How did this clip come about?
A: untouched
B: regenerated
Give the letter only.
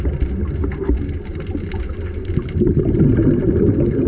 A